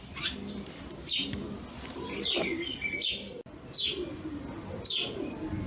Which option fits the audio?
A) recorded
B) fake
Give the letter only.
A